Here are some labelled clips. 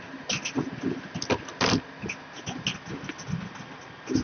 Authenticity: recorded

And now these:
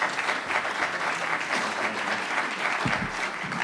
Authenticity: recorded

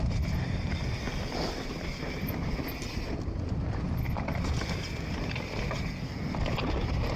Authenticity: recorded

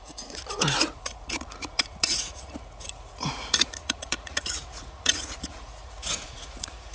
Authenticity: remade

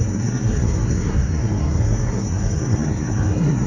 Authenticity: remade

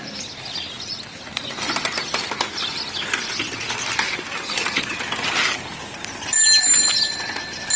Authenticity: recorded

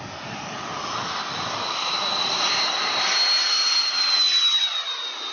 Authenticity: recorded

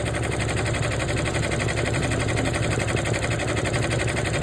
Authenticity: recorded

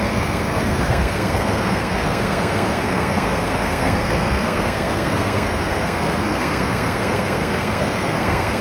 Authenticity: remade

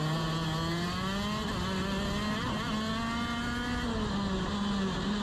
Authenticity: recorded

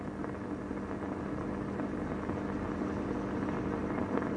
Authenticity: recorded